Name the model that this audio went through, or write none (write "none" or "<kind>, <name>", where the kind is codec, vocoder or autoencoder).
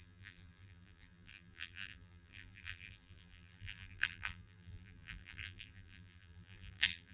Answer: vocoder, BigVGAN v2